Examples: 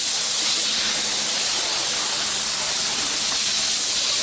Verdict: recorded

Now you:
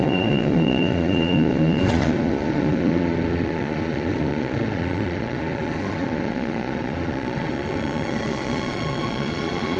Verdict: remade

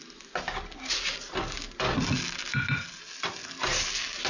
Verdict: recorded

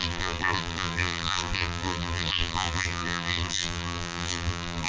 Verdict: remade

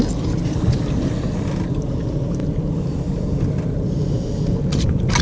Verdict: recorded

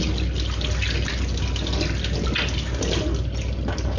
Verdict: recorded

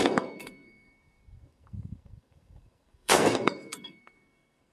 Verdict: remade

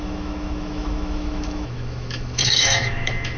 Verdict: remade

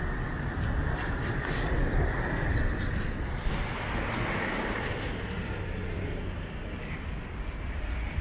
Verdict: remade